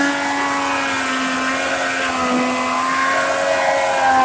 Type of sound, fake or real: real